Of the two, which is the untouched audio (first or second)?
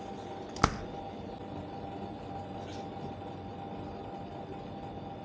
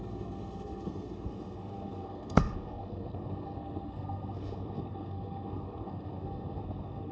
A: first